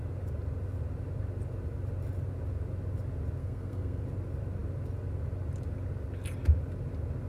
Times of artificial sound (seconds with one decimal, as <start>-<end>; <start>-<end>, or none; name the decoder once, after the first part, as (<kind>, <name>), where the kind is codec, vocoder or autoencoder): 3.4-4.0 (codec, SNAC)